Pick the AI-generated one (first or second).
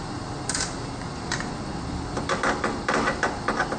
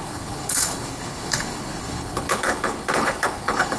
second